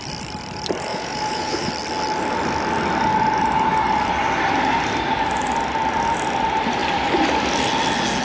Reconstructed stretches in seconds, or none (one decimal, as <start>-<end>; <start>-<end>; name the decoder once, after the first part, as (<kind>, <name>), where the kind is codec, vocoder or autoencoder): 0.9-1.7 (vocoder, Vocos)